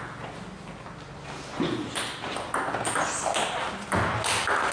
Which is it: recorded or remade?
recorded